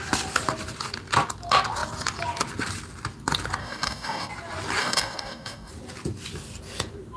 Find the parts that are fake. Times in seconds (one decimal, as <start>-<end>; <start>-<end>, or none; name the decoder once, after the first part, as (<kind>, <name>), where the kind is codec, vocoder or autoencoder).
3.6-4.3 (codec, DAC); 4.8-5.7